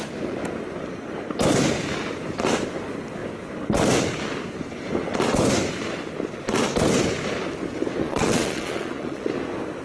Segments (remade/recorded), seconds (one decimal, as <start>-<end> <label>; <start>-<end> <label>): 0.0-8.0 recorded; 8.0-9.3 remade; 9.3-9.8 recorded